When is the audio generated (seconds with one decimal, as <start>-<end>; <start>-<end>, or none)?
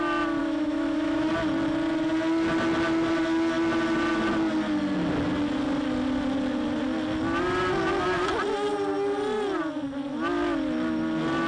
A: 0.4-1.3